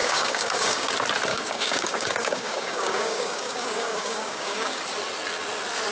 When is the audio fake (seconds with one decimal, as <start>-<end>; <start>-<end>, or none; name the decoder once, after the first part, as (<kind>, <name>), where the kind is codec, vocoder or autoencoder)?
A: 0.0-0.9 (codec, DAC); 1.3-4.8